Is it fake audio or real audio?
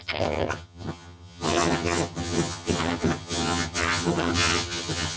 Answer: fake